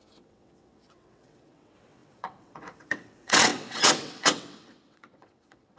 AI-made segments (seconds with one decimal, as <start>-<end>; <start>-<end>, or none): 0.0-5.8